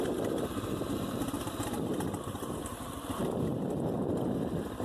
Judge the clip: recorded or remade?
recorded